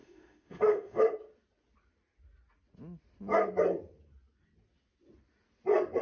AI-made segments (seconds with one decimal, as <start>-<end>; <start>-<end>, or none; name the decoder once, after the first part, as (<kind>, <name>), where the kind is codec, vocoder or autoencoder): 0.0-1.0 (autoencoder, DAC-VAE)